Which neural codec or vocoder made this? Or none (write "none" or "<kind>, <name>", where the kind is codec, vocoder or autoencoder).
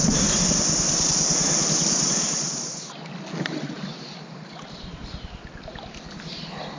none